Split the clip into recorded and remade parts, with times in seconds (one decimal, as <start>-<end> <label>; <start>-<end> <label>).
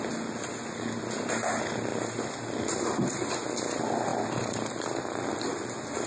0.0-1.9 recorded; 1.9-3.6 remade; 3.6-6.1 recorded